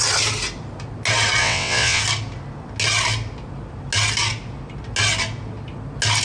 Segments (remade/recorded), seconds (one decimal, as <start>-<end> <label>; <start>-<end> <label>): 0.0-1.4 recorded; 1.4-2.0 remade; 2.0-6.2 recorded